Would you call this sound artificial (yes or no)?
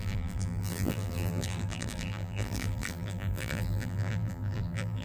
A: yes